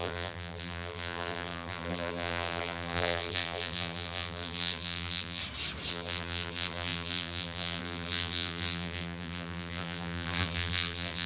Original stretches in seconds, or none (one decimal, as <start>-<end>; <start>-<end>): 5.4-5.9